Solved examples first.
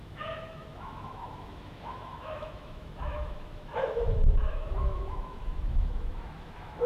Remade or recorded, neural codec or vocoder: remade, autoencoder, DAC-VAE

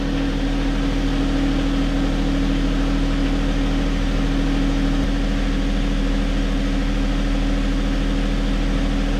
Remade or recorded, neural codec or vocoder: recorded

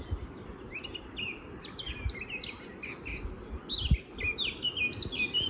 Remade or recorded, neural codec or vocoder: recorded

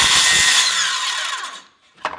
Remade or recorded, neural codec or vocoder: remade, vocoder, BigVGAN v2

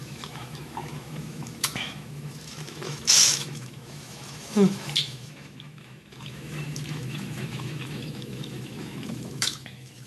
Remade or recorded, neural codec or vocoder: remade, autoencoder, DAC-VAE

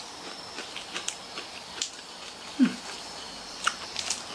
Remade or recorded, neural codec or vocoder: recorded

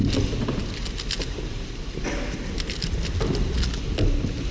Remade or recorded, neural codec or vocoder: recorded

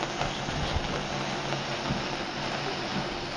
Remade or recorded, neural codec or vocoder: recorded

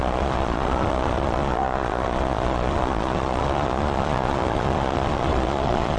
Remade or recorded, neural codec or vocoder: remade, vocoder, Vocos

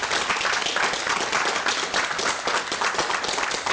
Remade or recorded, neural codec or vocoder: recorded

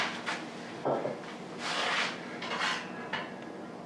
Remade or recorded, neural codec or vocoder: recorded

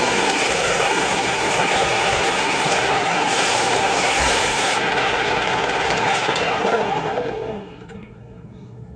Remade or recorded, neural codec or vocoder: remade, codec, SNAC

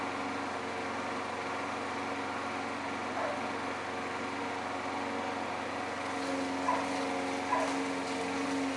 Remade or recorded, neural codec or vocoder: recorded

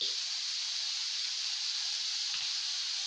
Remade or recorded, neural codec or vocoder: recorded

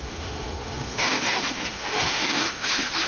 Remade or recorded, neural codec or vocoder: remade, autoencoder, DAC-VAE